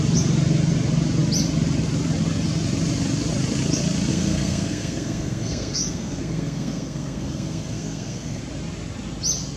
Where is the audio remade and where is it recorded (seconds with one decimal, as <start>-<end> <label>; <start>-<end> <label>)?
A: 0.0-4.1 recorded; 4.1-8.4 remade; 8.4-9.6 recorded